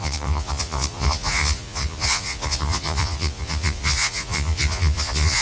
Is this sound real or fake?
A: fake